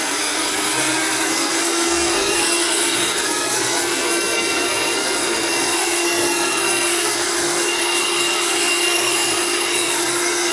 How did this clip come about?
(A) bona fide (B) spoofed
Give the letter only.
B